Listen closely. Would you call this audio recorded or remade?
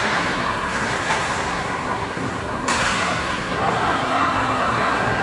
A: remade